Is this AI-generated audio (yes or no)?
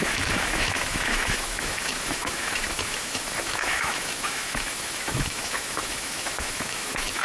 yes